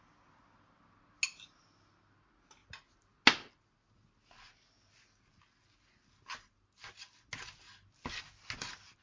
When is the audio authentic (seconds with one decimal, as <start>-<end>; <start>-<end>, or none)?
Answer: 0.0-9.0

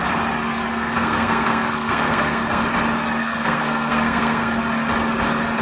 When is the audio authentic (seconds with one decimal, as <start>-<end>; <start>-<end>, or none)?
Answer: 0.0-0.7; 2.6-3.2; 4.6-5.6

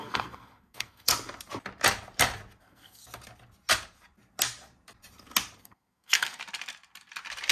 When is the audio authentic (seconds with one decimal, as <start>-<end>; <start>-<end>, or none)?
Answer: 1.1-2.6; 3.0-5.6; 6.4-7.5

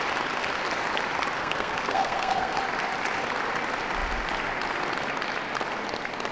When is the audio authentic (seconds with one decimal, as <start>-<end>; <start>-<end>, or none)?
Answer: 0.0-1.4; 2.6-6.3

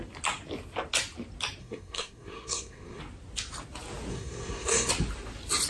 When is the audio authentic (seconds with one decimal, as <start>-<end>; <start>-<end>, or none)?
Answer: 0.0-1.6; 3.0-4.1; 4.9-5.7

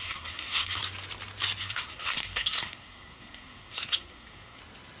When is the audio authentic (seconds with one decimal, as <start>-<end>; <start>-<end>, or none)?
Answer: 0.8-1.6; 4.6-5.0

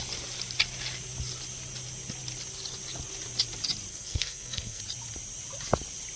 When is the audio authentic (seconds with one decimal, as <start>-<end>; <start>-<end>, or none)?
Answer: 0.0-3.9; 4.8-6.2